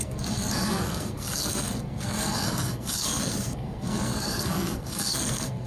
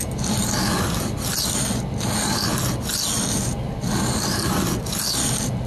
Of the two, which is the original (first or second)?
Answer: second